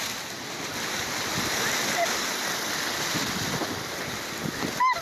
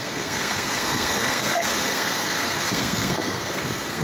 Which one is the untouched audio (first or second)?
first